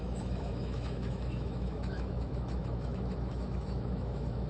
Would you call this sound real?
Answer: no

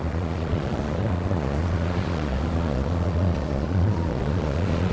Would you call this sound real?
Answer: no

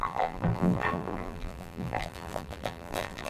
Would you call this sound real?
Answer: no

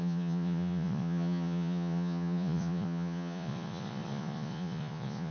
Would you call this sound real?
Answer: no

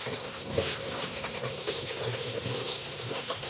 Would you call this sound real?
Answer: no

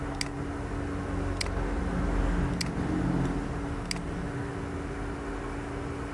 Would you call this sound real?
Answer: yes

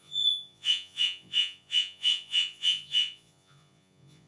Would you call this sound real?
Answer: no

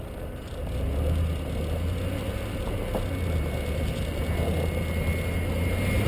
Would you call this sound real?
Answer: yes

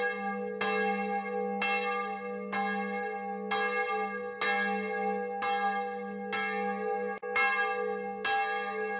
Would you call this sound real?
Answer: yes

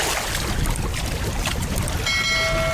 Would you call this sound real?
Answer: yes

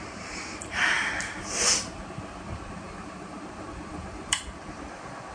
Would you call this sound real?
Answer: no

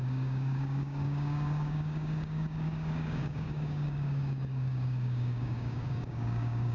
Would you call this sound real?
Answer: no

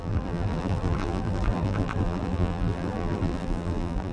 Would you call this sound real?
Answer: no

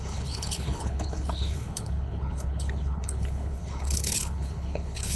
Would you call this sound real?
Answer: no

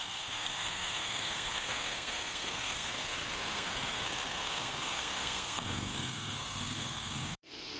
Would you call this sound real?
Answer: no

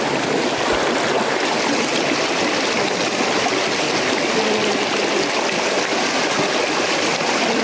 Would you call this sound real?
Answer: yes